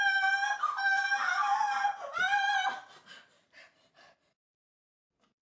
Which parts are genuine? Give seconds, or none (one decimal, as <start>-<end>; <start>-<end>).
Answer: 0.0-1.5; 3.9-5.4